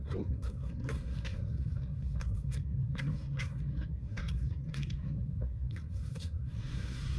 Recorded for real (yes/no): no